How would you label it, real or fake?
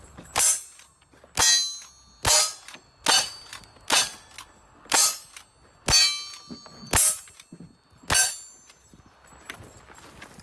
real